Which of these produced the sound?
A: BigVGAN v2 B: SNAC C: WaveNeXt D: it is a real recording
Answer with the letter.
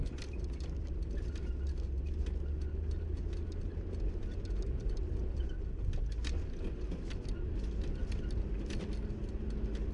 D